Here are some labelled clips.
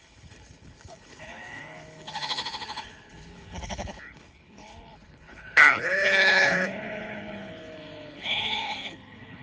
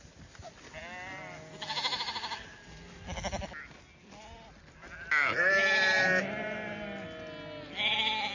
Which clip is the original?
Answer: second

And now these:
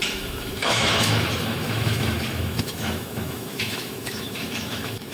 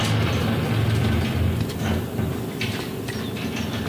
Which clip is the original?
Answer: second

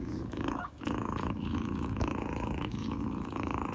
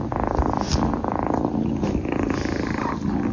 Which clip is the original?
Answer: second